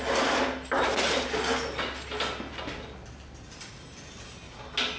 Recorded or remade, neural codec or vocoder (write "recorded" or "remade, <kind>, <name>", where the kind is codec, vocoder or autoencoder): recorded